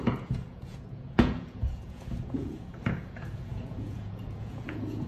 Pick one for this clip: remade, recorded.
remade